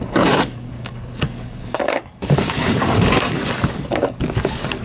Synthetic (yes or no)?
yes